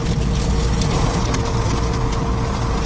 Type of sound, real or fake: real